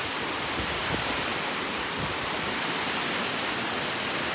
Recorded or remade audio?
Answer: recorded